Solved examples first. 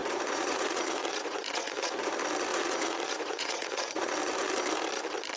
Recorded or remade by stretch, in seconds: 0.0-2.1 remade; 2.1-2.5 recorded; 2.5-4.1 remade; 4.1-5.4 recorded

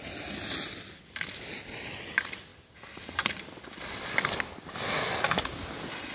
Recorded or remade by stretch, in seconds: 0.0-6.1 recorded